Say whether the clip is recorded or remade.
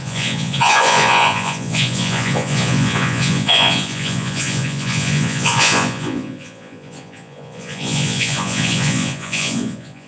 remade